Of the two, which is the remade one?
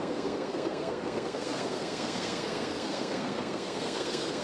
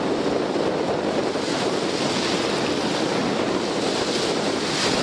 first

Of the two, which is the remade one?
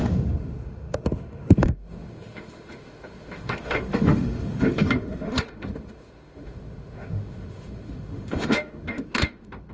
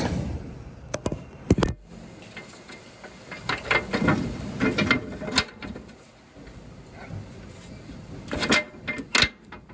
first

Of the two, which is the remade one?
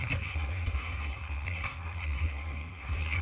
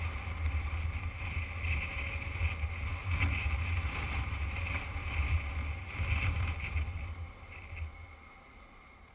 first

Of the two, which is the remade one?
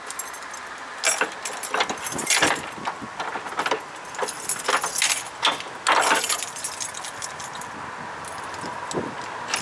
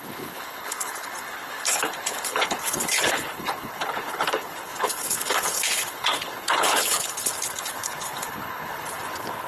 second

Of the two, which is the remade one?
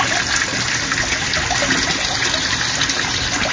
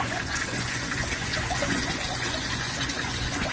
second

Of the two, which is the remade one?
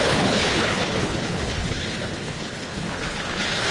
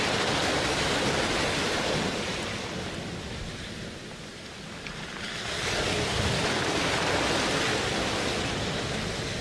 first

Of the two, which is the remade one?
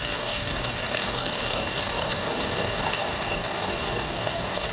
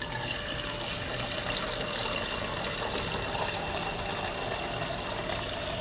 first